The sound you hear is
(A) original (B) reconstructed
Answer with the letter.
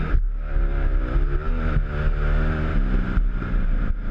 A